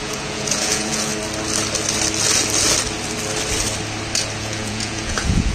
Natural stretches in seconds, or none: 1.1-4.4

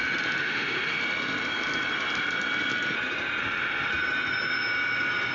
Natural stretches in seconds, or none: 0.0-0.4; 1.0-3.4; 3.9-5.3

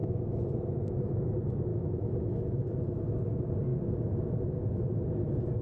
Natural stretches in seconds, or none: 0.5-1.7; 2.6-5.6

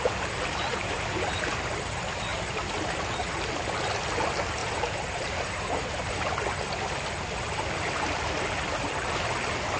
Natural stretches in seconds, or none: 0.0-0.7; 1.7-2.3; 3.0-4.6; 6.2-9.8